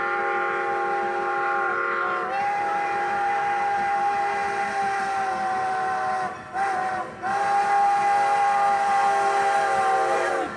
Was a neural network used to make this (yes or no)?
no